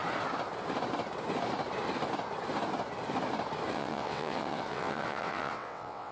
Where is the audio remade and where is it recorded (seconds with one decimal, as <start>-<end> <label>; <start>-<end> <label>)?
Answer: 0.0-3.7 recorded; 3.7-6.1 remade

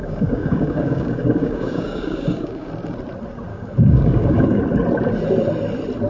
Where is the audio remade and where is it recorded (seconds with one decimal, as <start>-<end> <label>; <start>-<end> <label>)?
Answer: 0.0-2.7 remade; 2.7-3.5 recorded; 3.5-4.6 remade; 4.6-6.1 recorded

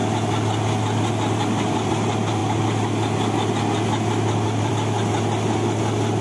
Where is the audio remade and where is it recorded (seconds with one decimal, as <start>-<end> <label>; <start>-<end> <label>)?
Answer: 0.0-6.2 recorded

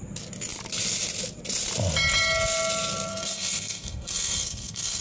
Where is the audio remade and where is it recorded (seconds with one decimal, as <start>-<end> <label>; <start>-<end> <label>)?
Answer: 0.0-3.1 recorded; 3.1-5.0 remade